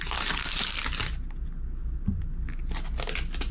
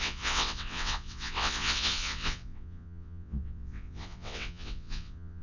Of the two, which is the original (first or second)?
first